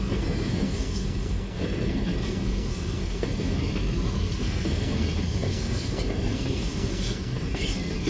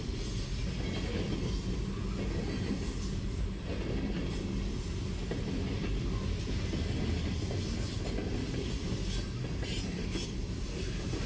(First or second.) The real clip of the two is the second